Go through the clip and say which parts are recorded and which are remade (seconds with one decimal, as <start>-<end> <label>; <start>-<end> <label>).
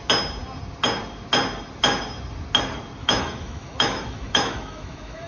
0.0-3.0 recorded; 3.0-5.3 remade